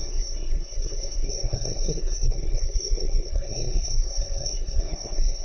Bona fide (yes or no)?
no